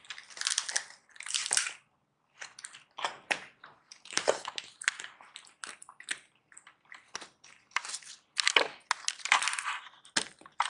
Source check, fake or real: real